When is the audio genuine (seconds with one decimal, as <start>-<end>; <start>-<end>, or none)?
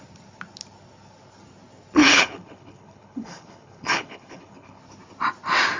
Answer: 0.0-2.0; 4.8-5.8